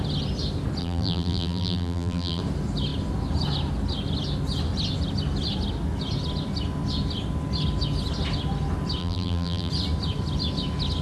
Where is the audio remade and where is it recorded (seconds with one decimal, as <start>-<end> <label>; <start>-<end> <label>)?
0.0-0.8 recorded; 0.8-2.4 remade; 2.4-9.0 recorded; 9.0-9.7 remade; 9.7-11.0 recorded